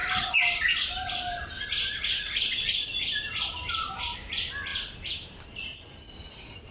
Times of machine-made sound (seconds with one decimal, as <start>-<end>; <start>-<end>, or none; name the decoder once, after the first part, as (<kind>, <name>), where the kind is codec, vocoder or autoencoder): 0.0-4.0 (vocoder, BigVGAN v2)